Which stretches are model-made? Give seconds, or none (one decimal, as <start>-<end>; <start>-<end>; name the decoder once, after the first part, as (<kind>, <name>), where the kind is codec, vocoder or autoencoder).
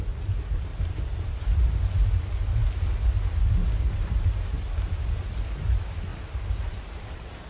0.7-2.1 (vocoder, BigVGAN v2); 3.6-4.4; 6.1-7.5